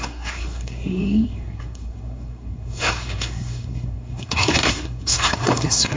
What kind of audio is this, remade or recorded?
remade